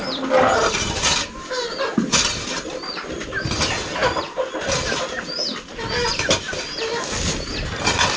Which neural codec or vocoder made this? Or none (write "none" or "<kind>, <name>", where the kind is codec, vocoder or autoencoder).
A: none